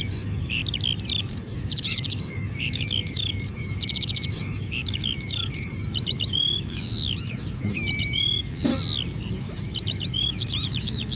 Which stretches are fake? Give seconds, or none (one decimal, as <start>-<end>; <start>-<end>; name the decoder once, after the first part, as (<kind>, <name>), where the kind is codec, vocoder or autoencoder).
0.0-0.6 (autoencoder, DAC-VAE); 1.2-8.7; 9.3-11.2

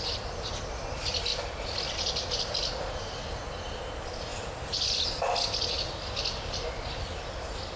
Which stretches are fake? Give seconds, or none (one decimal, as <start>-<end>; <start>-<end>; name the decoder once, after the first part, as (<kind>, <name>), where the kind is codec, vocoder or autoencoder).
none

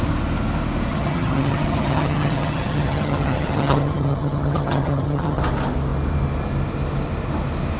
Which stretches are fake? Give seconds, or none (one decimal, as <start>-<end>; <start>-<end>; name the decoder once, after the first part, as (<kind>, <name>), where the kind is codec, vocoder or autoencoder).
0.9-5.4 (vocoder, HiFi-GAN)

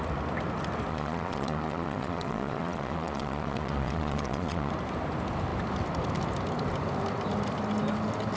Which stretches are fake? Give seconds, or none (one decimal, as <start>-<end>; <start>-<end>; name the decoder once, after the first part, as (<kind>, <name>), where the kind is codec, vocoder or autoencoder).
0.9-4.7 (vocoder, Vocos)

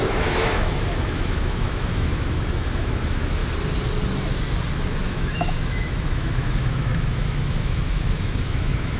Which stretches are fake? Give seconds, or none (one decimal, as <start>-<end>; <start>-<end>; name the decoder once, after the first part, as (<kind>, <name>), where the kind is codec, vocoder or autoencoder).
0.0-3.4 (autoencoder, DAC-VAE); 5.0-9.0